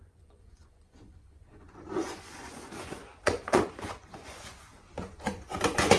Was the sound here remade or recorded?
remade